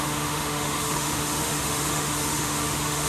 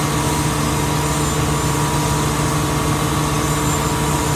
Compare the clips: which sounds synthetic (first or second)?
first